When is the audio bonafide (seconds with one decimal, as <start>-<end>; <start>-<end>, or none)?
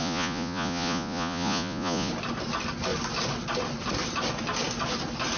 2.1-5.4